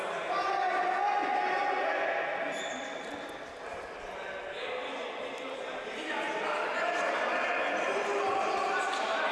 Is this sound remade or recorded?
recorded